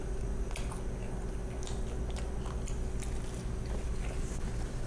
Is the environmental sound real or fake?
real